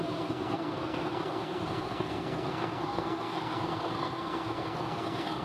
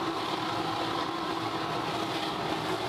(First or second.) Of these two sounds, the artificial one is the first